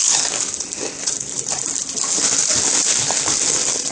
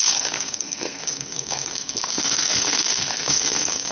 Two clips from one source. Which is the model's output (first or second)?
second